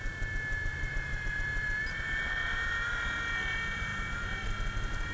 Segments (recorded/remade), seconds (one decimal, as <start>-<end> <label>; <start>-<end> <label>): 0.0-0.7 recorded; 0.7-3.2 remade; 3.2-5.1 recorded